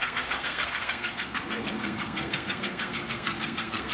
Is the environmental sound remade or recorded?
remade